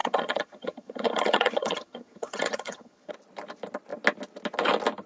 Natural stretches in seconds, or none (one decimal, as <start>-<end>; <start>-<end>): 3.1-5.1